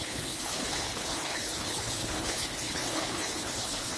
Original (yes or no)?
no